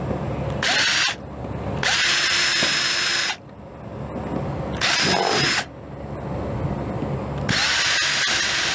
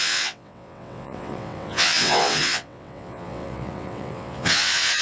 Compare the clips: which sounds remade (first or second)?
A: second